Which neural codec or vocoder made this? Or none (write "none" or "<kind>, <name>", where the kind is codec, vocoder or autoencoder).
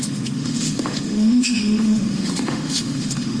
autoencoder, DAC-VAE